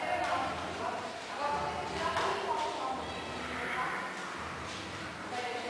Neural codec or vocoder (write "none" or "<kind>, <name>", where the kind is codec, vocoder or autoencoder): none